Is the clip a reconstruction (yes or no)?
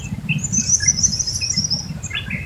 yes